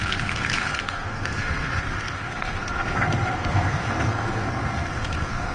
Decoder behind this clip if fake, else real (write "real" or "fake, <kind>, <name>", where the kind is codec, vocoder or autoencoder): fake, codec, SNAC